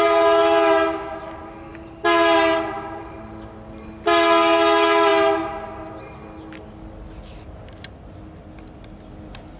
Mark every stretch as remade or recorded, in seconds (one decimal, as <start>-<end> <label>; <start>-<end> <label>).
0.0-9.6 recorded